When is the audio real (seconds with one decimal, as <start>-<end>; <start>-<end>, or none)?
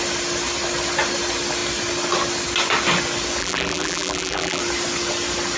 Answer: 0.0-3.4; 4.6-5.6